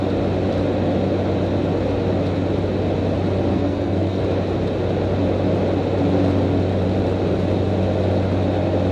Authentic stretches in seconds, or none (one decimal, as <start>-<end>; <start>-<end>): 0.0-3.5; 4.2-8.9